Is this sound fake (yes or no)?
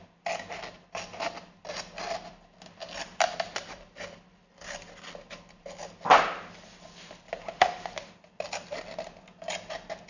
no